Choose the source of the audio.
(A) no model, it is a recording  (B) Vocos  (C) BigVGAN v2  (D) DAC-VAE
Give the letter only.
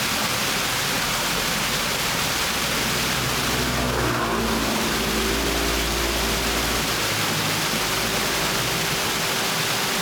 A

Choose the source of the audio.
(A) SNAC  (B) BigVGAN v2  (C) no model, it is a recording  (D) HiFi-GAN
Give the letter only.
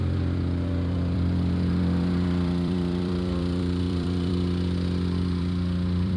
B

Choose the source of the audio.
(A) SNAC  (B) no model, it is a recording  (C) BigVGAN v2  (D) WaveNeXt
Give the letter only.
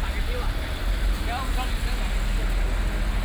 B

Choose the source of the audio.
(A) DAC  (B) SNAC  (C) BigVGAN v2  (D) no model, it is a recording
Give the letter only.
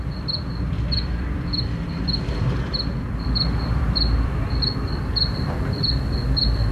C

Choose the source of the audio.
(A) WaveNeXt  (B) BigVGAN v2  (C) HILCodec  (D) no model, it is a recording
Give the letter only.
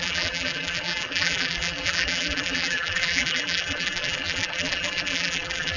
B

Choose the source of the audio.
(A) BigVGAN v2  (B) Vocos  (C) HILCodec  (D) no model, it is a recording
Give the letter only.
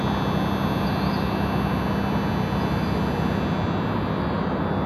D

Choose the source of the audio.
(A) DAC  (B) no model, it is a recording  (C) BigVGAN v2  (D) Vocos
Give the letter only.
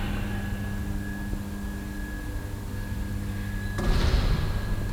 B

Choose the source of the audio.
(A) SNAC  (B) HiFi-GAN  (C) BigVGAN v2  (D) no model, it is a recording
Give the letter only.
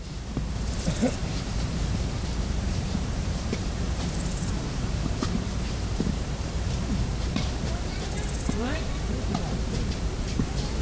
C